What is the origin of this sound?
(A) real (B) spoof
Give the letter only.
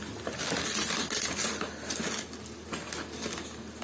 A